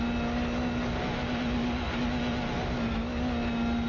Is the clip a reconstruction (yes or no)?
no